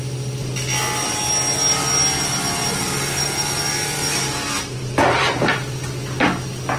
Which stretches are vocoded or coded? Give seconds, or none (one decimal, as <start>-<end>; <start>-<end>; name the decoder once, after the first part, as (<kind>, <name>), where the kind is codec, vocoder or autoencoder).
2.6-5.4 (vocoder, BigVGAN v2)